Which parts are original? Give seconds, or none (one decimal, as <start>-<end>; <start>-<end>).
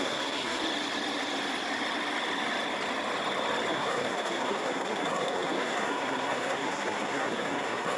0.6-3.7